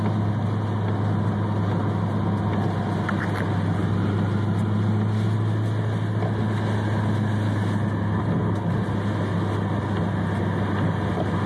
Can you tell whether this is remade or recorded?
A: recorded